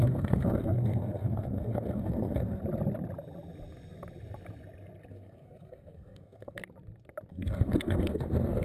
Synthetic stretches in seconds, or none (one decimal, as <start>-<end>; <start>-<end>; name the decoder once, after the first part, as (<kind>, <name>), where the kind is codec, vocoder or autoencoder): 0.0-2.6 (codec, SNAC); 5.1-6.6; 7.3-8.6